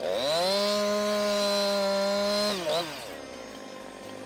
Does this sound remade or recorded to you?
recorded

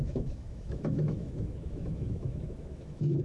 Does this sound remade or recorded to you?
remade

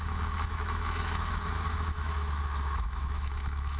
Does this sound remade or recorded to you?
remade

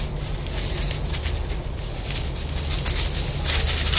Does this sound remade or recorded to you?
recorded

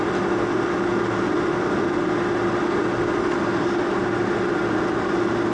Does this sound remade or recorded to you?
recorded